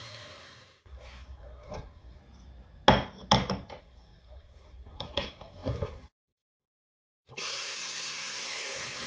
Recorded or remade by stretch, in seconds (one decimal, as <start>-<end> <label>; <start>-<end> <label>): 0.0-2.2 remade; 2.2-3.8 recorded; 3.8-9.1 remade